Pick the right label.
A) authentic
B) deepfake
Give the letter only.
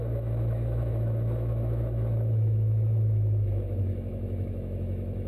B